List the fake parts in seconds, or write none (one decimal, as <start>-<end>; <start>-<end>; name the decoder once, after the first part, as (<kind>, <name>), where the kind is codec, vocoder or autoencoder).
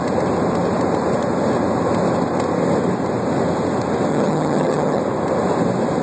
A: 4.1-5.0 (vocoder, HiFi-GAN)